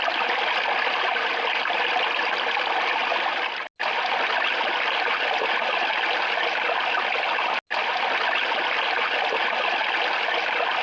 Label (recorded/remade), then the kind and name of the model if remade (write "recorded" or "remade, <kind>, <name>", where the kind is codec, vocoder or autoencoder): recorded